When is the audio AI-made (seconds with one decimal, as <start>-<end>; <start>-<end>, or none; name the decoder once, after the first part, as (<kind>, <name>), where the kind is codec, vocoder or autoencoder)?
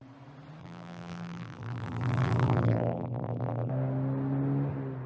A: 0.6-3.7 (vocoder, BigVGAN v2)